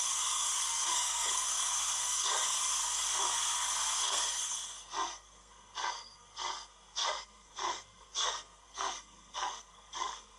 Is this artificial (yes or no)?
yes